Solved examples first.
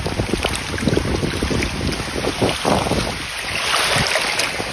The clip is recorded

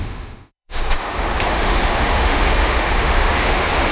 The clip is remade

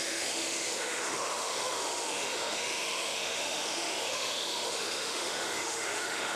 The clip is remade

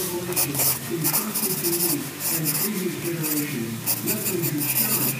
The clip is recorded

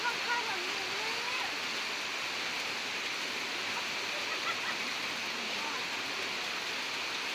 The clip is recorded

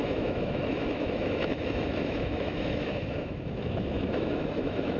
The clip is remade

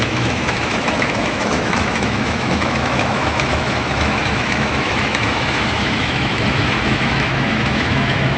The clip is remade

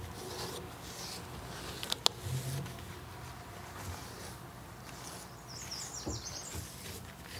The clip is recorded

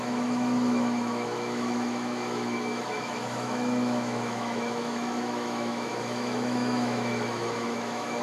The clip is remade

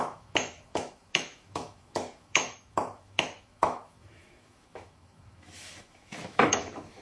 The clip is remade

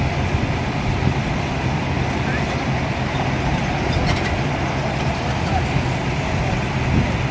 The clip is recorded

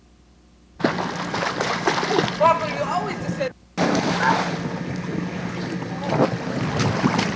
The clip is recorded